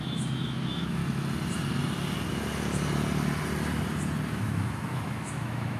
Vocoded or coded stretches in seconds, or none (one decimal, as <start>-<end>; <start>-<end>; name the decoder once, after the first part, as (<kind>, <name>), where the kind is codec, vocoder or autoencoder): 0.0-1.0 (autoencoder, DAC-VAE); 4.3-5.8